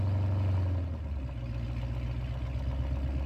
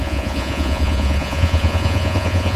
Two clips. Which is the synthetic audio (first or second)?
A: second